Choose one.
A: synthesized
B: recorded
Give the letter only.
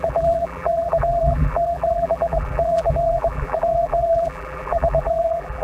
A